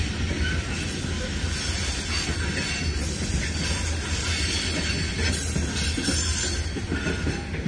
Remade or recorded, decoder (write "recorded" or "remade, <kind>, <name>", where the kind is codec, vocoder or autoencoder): recorded